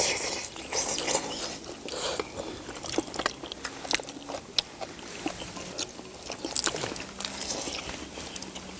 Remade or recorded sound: recorded